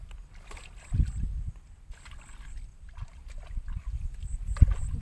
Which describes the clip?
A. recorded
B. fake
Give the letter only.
A